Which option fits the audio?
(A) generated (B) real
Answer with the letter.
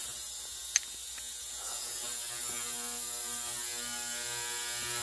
B